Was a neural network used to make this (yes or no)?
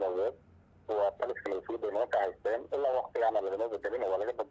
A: no